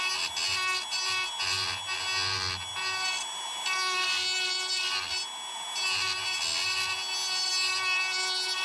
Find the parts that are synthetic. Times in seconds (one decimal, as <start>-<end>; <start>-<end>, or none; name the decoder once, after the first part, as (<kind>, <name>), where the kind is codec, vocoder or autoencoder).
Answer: none